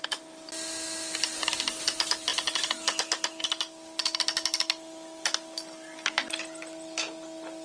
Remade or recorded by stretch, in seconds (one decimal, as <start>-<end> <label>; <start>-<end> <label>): 0.0-7.6 recorded